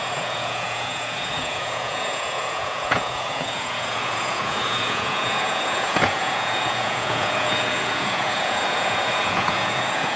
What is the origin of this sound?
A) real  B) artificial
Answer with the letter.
B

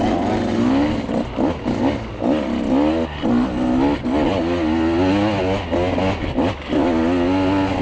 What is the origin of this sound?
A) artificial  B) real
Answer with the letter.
B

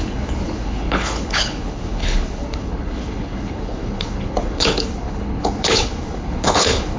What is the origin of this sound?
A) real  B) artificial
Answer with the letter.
B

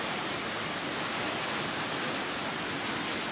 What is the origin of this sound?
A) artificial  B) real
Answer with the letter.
B